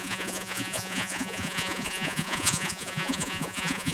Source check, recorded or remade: remade